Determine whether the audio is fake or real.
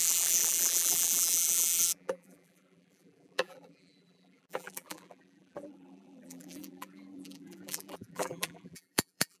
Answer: fake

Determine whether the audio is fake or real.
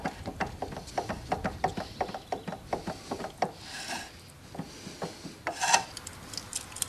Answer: real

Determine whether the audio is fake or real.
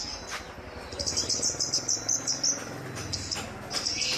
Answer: real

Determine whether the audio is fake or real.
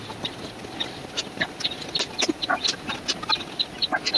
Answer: real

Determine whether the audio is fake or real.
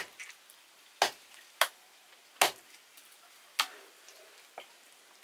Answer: real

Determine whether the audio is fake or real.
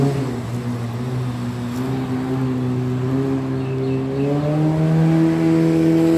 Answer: real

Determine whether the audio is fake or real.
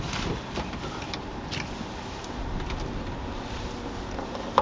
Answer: real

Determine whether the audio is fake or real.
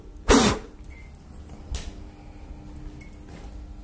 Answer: real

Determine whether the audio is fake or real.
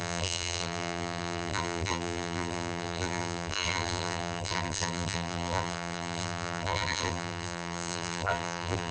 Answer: fake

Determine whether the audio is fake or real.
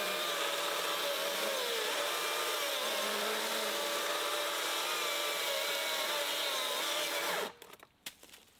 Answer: real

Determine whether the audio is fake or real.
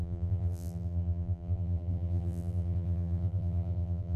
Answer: fake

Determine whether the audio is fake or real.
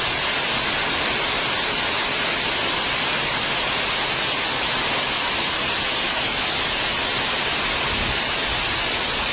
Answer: real